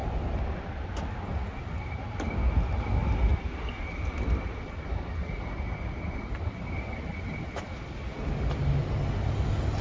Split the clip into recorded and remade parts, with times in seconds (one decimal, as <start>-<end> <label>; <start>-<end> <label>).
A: 0.0-9.8 recorded